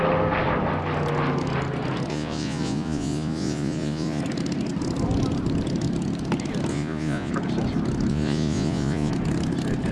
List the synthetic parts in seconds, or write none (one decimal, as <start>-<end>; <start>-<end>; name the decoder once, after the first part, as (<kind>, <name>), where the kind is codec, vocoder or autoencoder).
2.1-4.2 (vocoder, Vocos); 6.7-7.3; 8.1-9.1